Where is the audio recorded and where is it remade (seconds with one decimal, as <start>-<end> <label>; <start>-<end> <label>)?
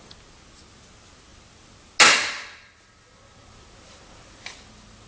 0.0-5.1 recorded